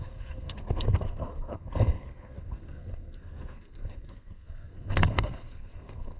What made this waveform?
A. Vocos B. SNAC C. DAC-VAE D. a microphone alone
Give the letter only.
B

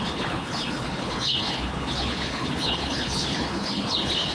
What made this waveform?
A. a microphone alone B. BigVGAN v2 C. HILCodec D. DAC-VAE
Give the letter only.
C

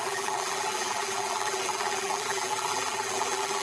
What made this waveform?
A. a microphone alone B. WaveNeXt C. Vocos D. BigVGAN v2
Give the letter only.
D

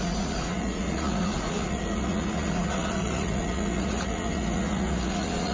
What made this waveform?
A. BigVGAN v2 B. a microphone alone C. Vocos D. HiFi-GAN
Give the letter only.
C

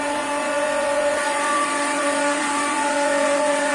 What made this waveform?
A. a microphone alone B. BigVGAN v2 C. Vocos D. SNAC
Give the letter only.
C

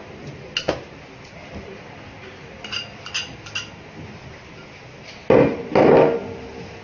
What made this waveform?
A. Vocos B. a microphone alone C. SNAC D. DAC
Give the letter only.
B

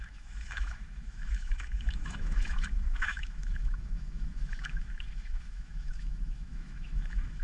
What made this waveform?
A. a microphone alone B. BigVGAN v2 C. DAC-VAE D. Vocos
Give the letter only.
C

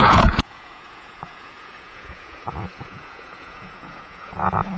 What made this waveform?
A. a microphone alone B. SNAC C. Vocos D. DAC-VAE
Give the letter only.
C